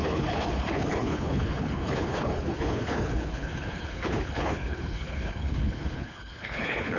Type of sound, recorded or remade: remade